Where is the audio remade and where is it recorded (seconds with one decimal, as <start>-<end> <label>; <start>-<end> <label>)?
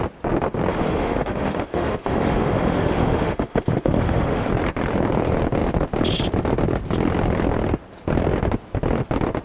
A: 0.0-0.7 recorded; 0.7-4.5 remade; 4.5-9.4 recorded